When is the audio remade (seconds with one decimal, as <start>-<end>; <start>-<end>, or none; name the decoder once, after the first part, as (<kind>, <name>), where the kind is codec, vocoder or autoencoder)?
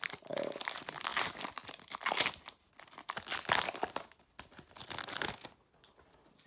none